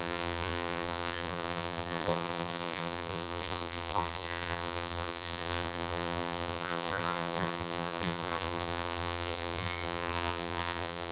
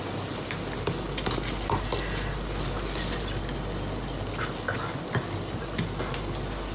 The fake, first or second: first